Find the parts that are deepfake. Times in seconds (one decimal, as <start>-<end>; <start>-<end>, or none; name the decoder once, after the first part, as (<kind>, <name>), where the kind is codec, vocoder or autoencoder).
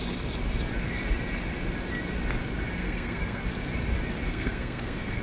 2.8-3.4 (codec, SNAC); 4.3-5.2